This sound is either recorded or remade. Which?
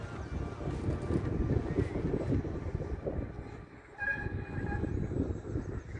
recorded